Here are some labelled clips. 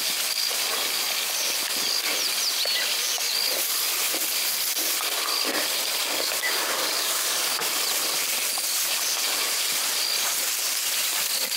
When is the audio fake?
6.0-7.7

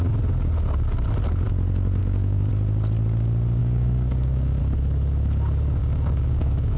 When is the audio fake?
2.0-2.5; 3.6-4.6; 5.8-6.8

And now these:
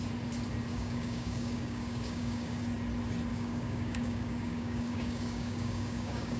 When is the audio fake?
0.7-2.6; 3.3-6.4

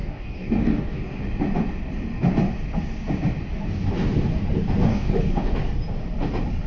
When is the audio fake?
0.0-1.2; 4.9-5.5

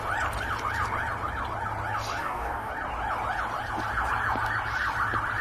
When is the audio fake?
2.2-2.7

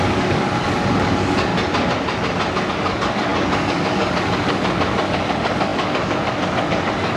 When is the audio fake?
0.0-1.5; 2.7-7.2